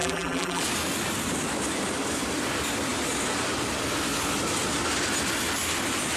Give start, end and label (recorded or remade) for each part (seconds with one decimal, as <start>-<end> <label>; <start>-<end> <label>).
0.0-0.6 remade; 0.6-6.2 recorded